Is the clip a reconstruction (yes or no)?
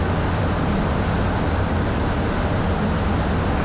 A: no